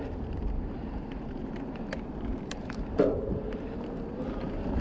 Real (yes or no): no